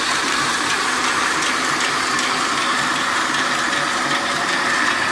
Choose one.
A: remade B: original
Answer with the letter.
A